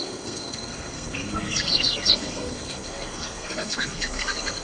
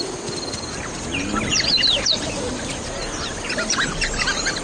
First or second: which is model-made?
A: first